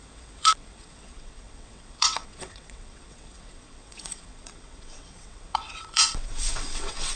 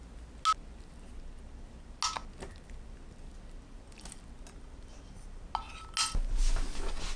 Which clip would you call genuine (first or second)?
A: second